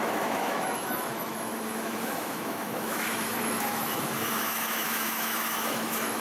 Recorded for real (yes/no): no